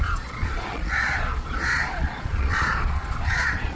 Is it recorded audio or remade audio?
remade